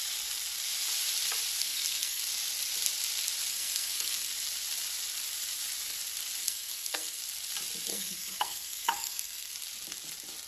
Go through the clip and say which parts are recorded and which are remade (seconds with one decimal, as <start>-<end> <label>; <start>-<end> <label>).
0.0-1.6 recorded; 1.6-2.2 remade; 2.2-3.5 recorded; 3.5-4.3 remade; 4.3-6.4 recorded; 6.4-7.2 remade; 7.2-7.9 recorded; 7.9-9.5 remade; 9.5-10.5 recorded